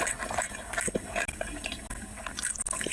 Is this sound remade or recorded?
recorded